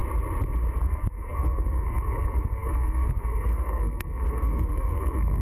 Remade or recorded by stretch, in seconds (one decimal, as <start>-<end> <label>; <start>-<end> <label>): 0.0-0.8 recorded; 0.8-5.4 remade